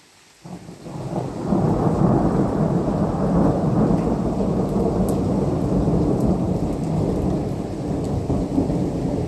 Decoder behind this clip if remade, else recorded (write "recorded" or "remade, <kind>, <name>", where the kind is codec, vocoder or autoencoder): recorded